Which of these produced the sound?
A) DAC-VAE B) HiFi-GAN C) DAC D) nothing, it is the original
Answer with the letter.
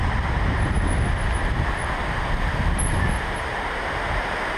D